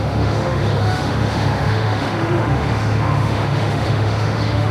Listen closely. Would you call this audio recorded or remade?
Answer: remade